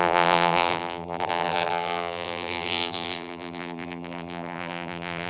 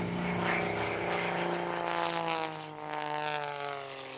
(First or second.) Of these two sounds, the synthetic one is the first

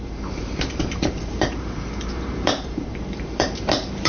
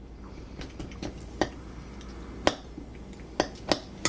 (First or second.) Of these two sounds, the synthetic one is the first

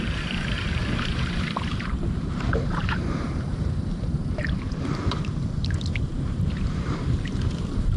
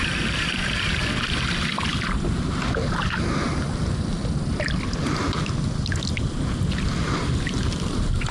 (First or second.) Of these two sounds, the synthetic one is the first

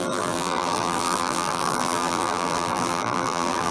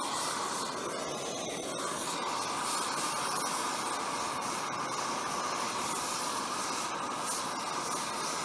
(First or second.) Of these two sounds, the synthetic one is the first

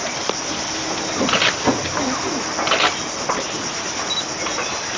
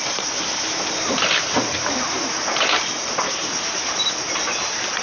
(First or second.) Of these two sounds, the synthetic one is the second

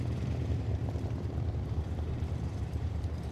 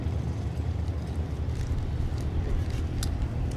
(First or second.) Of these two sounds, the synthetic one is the first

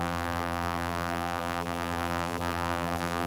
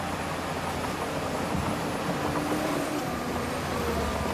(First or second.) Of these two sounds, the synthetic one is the first